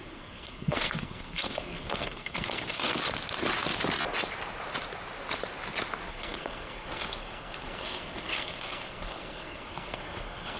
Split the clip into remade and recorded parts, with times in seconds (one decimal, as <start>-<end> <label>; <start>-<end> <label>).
0.0-3.0 remade; 3.0-6.1 recorded; 6.1-10.6 remade